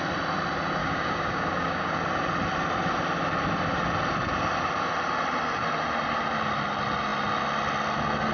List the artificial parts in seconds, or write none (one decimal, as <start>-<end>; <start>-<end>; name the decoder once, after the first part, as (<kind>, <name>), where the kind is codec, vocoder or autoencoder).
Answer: 0.8-2.0 (codec, DAC)